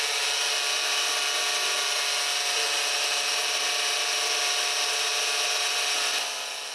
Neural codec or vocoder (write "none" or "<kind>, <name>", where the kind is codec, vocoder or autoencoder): none